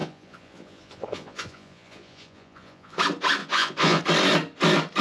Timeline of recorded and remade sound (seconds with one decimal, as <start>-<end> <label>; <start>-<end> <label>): 0.0-3.0 remade; 3.0-3.4 recorded; 3.4-4.0 remade; 4.0-5.0 recorded